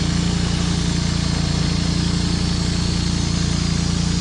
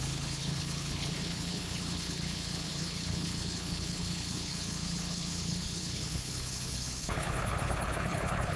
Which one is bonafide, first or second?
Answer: first